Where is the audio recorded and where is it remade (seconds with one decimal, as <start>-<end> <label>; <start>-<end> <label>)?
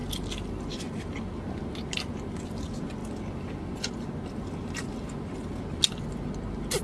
0.0-6.8 recorded